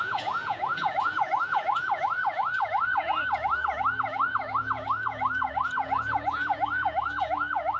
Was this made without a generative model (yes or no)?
no